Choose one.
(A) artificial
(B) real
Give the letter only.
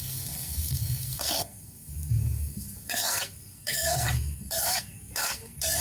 A